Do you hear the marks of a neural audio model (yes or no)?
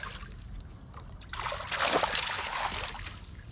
no